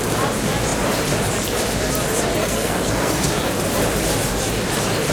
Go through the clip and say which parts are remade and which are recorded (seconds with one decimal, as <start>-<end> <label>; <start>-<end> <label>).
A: 0.0-2.4 recorded; 2.4-3.3 remade; 3.3-5.1 recorded